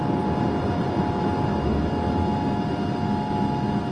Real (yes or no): yes